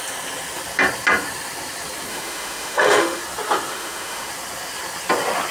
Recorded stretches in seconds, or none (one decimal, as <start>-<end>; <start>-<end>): 0.0-2.1; 3.2-3.7; 4.3-5.5